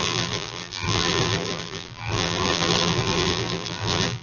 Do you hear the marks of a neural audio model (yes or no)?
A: yes